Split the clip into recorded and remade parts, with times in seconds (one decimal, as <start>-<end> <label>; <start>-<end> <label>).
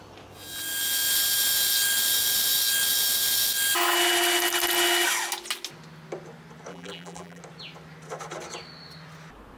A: 0.0-6.7 recorded; 6.7-7.4 remade; 7.4-9.6 recorded